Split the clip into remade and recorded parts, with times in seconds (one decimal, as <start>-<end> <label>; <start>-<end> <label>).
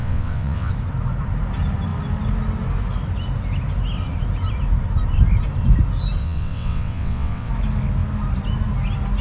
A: 0.0-0.7 remade; 0.7-6.2 recorded; 6.2-7.5 remade; 7.5-9.2 recorded